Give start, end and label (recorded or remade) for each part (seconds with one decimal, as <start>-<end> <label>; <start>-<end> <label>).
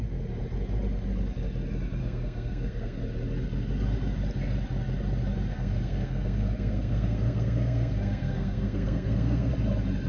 0.0-2.0 recorded; 2.0-3.0 remade; 3.0-5.5 recorded; 5.5-9.5 remade; 9.5-10.1 recorded